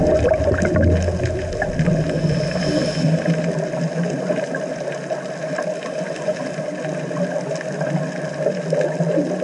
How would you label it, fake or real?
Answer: real